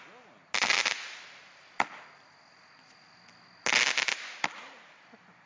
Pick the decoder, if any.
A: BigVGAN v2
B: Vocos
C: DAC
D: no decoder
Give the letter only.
D